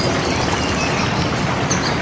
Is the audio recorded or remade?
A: recorded